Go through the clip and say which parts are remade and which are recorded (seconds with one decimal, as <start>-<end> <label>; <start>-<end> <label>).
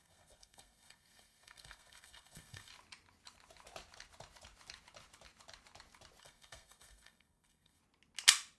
0.0-2.7 remade; 2.7-6.2 recorded; 6.2-7.8 remade; 7.8-8.6 recorded